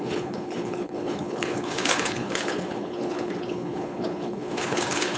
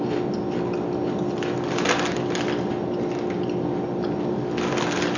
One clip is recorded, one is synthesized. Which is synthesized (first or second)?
first